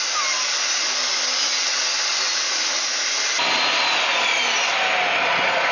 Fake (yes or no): no